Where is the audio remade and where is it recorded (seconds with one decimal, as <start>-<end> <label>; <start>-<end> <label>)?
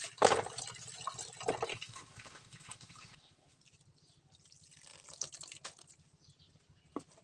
0.0-1.7 recorded; 1.7-3.6 remade; 3.6-7.2 recorded